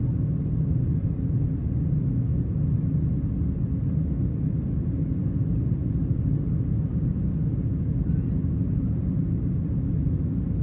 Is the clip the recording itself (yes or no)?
yes